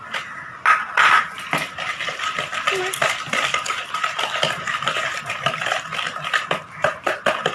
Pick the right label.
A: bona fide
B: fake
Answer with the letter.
B